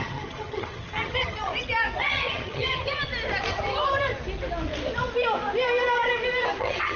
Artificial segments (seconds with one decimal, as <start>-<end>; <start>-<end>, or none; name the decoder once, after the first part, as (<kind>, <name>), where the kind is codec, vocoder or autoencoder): 0.0-1.5 (vocoder, HiFi-GAN); 2.0-3.1; 6.6-7.0